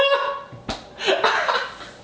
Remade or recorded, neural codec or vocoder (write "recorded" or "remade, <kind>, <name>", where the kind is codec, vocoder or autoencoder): recorded